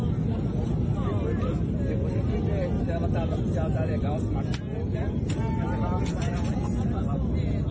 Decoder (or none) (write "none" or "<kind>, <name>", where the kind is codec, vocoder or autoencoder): none